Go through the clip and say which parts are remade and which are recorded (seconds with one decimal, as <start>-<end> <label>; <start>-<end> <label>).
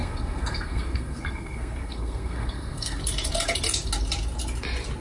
0.0-3.0 remade; 3.0-5.0 recorded